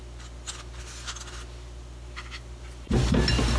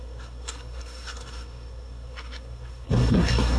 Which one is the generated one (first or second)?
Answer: second